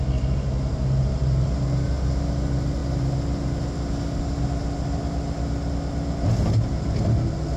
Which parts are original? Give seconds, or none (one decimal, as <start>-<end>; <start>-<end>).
0.0-7.6